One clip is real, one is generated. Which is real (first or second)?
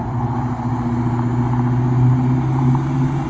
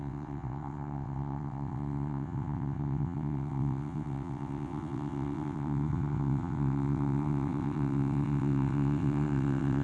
first